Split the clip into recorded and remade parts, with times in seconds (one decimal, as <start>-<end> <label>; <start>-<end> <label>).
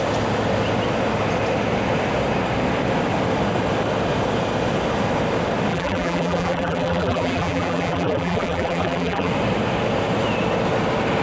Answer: 0.0-5.7 recorded; 5.7-9.3 remade; 9.3-11.2 recorded